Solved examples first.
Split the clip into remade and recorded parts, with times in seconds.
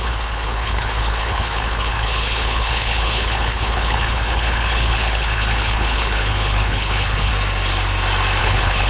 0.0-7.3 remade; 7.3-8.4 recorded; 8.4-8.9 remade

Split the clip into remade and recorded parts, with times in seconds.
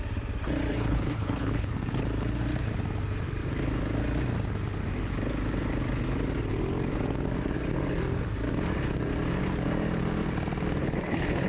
0.0-0.7 recorded; 0.7-1.7 remade; 1.7-10.8 recorded; 10.8-11.5 remade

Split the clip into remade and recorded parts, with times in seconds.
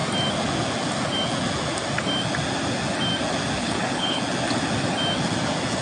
0.0-3.6 recorded; 3.6-4.2 remade; 4.2-5.8 recorded